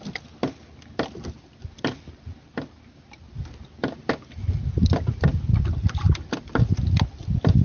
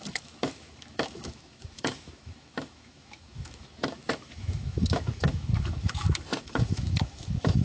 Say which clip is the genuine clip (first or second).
first